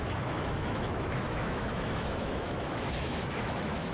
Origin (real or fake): fake